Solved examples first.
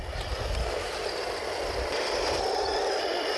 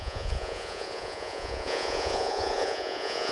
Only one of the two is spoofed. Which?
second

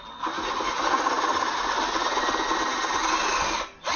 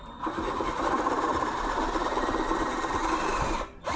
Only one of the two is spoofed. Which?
second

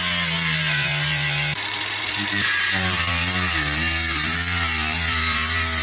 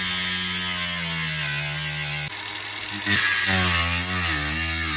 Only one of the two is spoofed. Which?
first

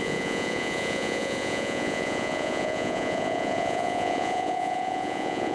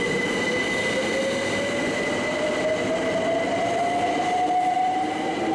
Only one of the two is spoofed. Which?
first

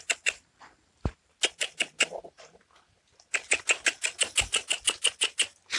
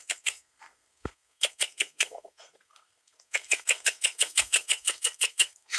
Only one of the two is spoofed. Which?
second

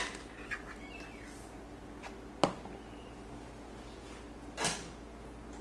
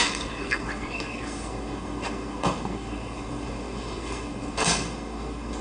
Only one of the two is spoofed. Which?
second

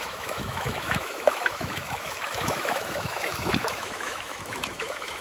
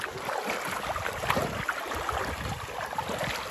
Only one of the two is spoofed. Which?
first